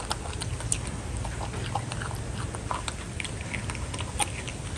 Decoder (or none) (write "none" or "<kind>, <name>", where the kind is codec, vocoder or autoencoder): none